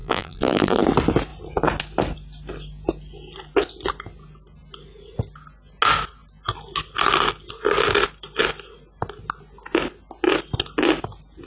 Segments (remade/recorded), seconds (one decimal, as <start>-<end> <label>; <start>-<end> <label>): 0.0-0.8 remade; 0.8-11.5 recorded